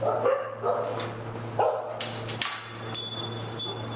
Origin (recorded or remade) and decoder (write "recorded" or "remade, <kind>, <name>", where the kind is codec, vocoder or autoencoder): recorded